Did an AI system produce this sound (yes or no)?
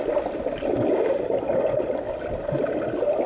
no